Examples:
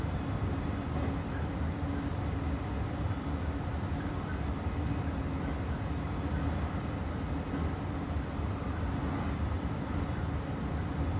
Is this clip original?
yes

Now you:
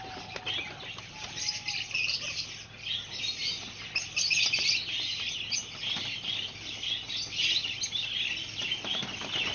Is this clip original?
yes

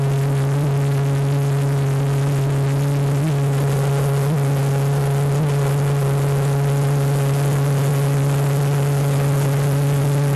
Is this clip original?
yes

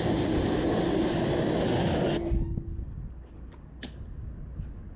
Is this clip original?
yes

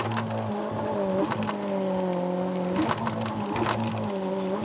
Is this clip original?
yes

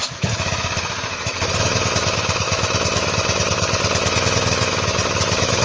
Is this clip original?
no